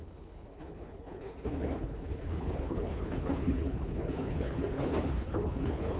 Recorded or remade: remade